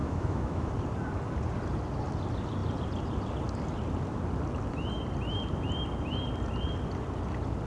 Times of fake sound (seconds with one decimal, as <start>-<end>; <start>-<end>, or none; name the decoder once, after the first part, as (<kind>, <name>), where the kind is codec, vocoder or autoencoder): 0.0-0.7 (autoencoder, DAC-VAE)

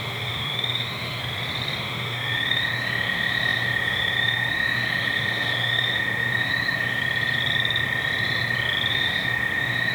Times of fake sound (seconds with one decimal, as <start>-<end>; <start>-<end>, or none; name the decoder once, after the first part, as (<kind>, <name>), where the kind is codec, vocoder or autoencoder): 0.0-1.2 (autoencoder, DAC-VAE); 1.8-7.0; 8.9-9.9

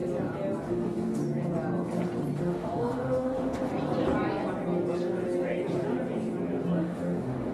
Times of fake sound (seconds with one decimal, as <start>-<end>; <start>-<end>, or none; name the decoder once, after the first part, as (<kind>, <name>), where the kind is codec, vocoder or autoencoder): 0.7-1.2 (autoencoder, DAC-VAE); 2.4-3.7; 6.8-7.5

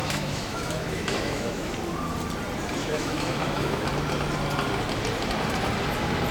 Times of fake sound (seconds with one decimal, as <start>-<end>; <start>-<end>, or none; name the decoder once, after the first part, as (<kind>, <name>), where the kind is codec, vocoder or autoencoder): 0.0-1.7 (autoencoder, DAC-VAE); 2.8-3.9

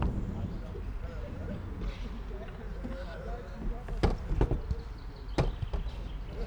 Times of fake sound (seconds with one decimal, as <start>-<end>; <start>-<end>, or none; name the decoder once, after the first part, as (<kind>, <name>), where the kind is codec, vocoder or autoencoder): none

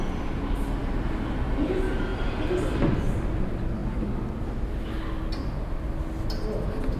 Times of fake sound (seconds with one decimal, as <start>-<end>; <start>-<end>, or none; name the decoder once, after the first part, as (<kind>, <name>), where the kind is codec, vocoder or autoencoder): none

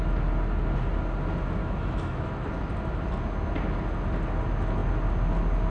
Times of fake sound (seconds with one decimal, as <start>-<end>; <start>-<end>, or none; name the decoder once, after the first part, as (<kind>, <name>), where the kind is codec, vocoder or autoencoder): 1.6-2.5 (autoencoder, DAC-VAE)